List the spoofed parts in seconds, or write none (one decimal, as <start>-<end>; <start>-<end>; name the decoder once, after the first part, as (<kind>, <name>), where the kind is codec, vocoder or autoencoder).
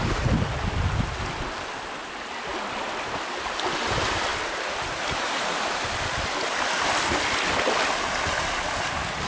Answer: none